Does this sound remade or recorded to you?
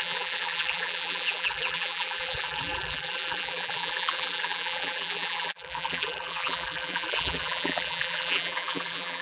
remade